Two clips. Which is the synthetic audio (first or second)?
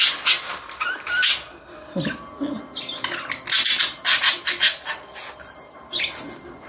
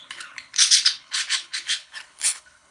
second